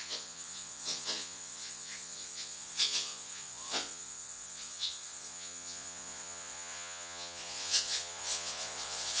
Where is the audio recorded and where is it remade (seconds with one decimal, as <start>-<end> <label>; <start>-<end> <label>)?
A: 0.0-9.2 remade

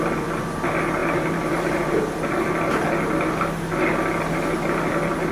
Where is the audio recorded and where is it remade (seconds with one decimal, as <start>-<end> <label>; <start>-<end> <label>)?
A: 0.0-1.0 recorded; 1.0-1.9 remade; 1.9-5.3 recorded

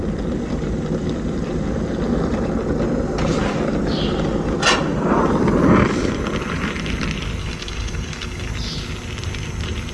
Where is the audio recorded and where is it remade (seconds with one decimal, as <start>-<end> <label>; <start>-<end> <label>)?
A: 0.0-7.4 recorded; 7.4-8.5 remade; 8.5-9.9 recorded

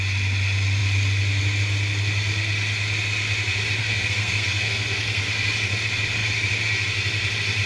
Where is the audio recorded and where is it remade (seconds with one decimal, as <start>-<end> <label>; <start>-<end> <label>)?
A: 0.0-3.8 recorded; 3.8-5.2 remade; 5.2-7.7 recorded